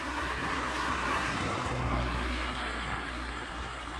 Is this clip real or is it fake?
fake